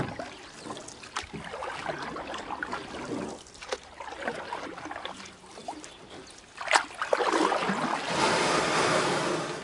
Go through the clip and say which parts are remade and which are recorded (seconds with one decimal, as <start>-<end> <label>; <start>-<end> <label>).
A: 0.0-1.6 recorded; 1.6-2.4 remade; 2.4-9.6 recorded